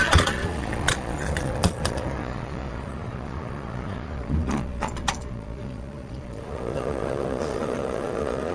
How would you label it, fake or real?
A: fake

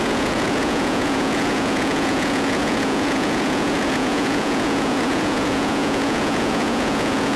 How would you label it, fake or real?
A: fake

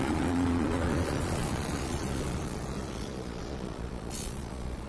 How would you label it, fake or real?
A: fake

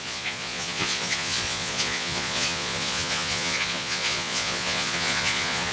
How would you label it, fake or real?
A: fake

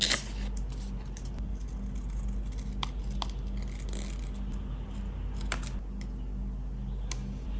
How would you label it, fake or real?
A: real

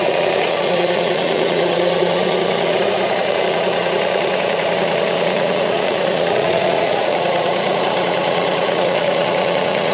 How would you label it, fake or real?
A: fake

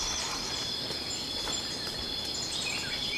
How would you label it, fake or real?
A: real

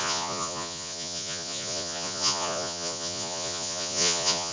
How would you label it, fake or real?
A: fake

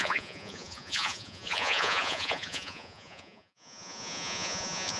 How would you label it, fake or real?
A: fake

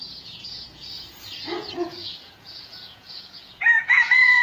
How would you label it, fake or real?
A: fake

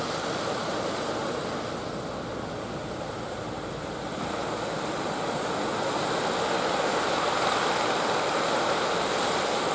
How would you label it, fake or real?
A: real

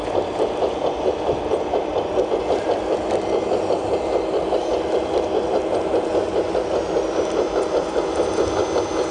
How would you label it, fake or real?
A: real